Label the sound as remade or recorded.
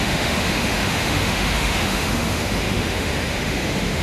remade